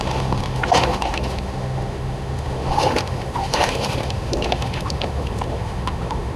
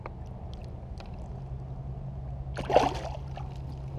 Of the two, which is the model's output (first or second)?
first